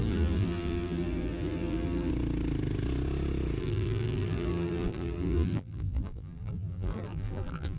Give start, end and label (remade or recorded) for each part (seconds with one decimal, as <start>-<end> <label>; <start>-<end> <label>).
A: 0.0-2.1 remade; 2.1-3.6 recorded; 3.6-7.8 remade